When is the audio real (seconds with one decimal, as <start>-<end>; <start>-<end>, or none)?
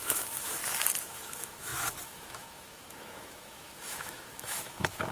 0.6-1.1